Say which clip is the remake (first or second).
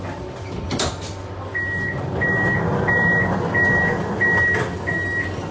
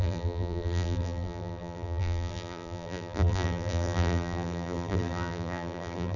second